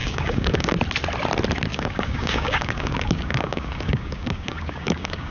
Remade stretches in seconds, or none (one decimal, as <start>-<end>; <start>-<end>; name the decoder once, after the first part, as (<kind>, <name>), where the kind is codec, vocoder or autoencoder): 0.0-0.7 (codec, DAC); 1.7-5.3